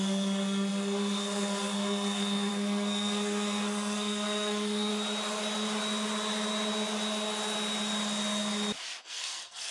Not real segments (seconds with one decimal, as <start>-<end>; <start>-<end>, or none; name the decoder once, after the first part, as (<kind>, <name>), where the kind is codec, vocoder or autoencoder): 0.0-4.9 (codec, SNAC); 9.0-9.7